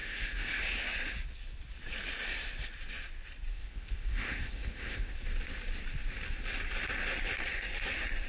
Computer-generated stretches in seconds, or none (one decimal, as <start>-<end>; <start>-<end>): 0.0-0.6; 3.5-5.1